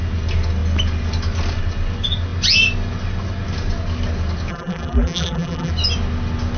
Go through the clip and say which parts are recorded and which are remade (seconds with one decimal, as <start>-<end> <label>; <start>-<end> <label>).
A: 0.0-4.5 recorded; 4.5-5.7 remade; 5.7-6.6 recorded